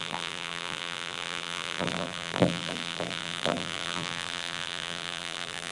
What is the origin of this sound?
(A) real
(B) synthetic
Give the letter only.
B